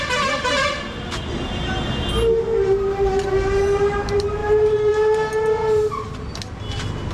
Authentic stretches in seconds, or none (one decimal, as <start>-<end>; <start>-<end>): 0.0-7.1